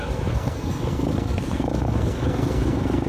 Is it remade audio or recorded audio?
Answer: remade